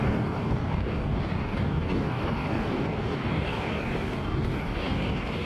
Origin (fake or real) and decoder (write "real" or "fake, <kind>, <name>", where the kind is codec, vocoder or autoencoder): fake, codec, DAC